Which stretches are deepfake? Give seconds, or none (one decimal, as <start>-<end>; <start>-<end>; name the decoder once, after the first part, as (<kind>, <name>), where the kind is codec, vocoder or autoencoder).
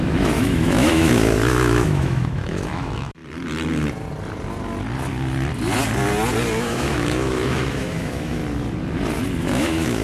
0.0-3.2 (autoencoder, DAC-VAE); 6.6-8.4; 9.4-10.0